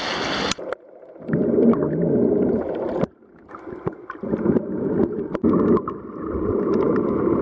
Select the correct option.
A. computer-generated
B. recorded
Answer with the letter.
B